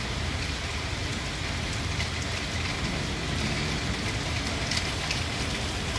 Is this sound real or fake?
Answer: real